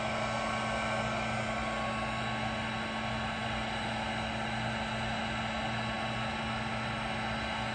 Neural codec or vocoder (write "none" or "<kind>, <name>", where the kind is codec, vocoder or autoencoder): none